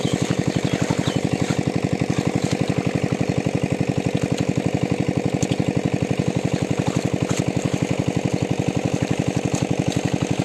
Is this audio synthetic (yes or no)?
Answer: no